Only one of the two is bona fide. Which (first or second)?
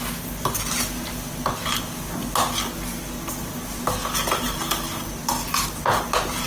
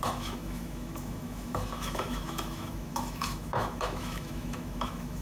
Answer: first